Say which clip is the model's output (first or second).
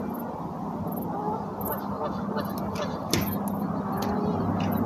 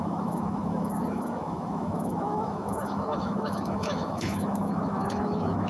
second